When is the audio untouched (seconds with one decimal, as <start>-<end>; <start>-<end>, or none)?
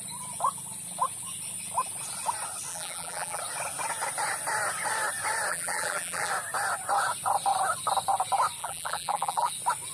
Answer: 0.0-2.7; 3.4-5.5; 6.3-8.6; 9.5-9.9